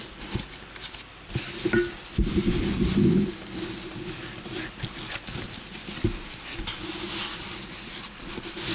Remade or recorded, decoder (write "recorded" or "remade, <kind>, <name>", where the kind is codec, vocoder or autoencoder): recorded